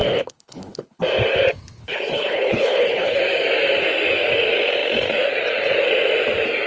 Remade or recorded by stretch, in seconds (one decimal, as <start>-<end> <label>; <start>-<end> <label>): 0.0-1.0 remade; 1.0-1.8 recorded; 1.8-3.2 remade; 3.2-6.7 recorded